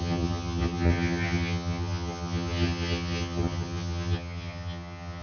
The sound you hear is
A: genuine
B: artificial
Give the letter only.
B